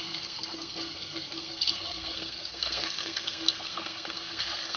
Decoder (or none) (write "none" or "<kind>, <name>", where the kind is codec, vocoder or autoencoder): codec, SNAC